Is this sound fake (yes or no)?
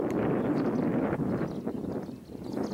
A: no